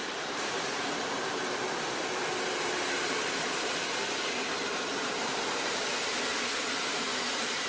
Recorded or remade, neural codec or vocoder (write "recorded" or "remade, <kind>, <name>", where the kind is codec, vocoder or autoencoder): remade, vocoder, BigVGAN v2